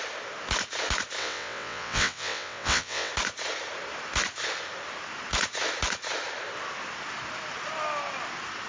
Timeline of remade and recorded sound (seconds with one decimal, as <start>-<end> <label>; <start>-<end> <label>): 0.0-1.2 recorded; 1.2-3.1 remade; 3.1-8.7 recorded